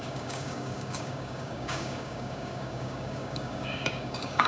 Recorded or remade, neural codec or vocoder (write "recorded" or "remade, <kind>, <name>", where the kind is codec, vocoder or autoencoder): remade, codec, DAC